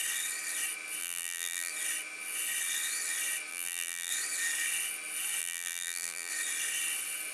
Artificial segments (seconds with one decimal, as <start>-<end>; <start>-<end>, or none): 1.0-1.7; 3.5-4.1; 5.4-6.3